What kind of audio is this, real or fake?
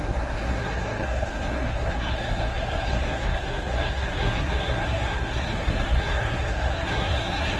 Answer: fake